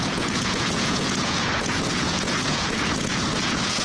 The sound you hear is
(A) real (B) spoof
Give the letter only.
B